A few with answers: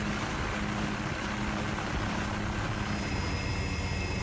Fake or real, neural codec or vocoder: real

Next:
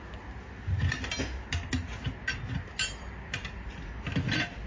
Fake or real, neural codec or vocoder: real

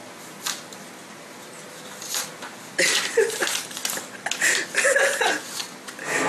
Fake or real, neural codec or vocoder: real